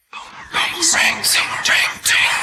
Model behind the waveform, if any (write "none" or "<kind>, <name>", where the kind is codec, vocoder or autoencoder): none